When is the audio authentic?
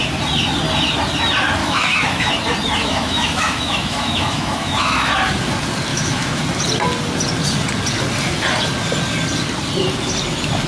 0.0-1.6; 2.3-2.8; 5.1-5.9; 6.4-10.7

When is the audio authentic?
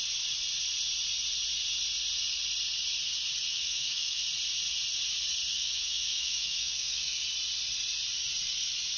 0.0-3.5; 4.2-5.5; 7.2-9.0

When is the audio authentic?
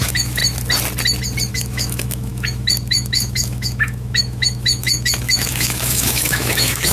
0.4-1.5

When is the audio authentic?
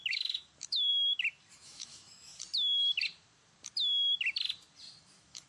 0.9-1.5; 2.3-5.0